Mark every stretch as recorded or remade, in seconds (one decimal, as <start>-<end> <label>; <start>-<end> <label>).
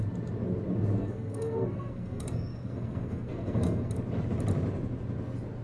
0.0-1.0 recorded; 1.0-3.9 remade; 3.9-5.6 recorded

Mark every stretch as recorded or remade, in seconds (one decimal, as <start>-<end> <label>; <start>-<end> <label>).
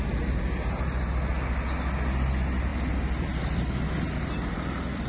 0.0-5.1 recorded